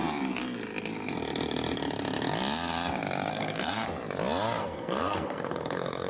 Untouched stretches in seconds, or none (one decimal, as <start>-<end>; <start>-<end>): 0.0-3.3; 3.9-4.6